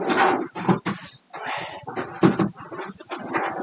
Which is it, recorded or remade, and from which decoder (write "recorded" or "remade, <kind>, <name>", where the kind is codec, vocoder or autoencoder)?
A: recorded